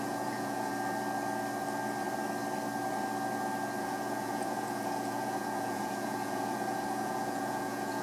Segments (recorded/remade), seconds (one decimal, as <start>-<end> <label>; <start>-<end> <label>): 0.0-0.7 remade; 0.7-3.8 recorded; 3.8-8.0 remade